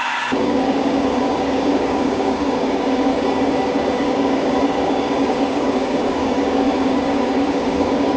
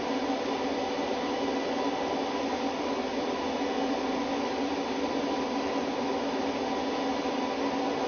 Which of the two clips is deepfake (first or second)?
first